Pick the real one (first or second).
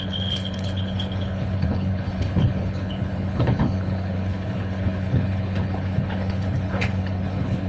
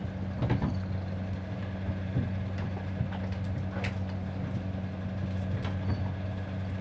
second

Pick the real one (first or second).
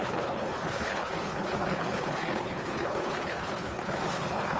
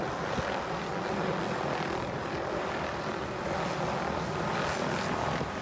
second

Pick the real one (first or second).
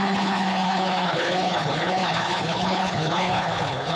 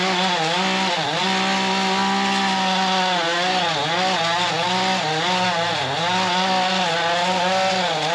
second